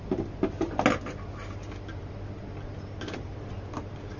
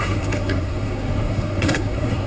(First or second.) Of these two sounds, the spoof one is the second